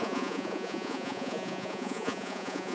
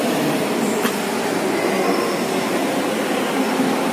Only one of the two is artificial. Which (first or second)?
first